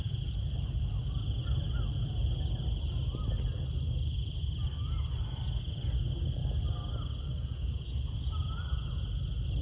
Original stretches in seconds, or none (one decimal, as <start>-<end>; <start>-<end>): 0.0-7.4; 9.2-9.6